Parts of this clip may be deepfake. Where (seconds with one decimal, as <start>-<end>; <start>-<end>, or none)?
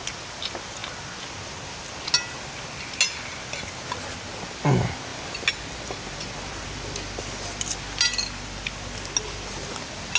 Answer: none